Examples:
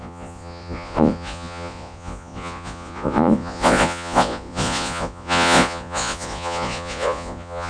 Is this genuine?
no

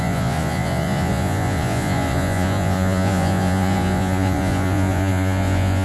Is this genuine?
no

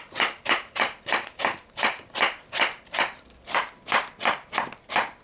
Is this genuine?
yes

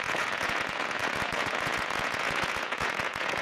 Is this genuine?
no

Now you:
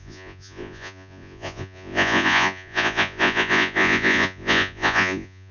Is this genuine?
no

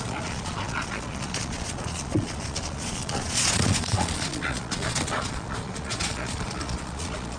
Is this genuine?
no